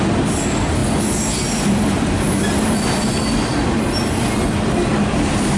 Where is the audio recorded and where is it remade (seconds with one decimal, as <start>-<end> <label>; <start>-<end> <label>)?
0.0-5.6 recorded